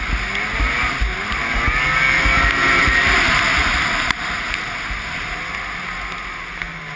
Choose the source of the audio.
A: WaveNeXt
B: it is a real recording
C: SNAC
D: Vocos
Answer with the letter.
B